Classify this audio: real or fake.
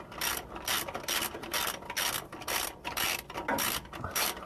real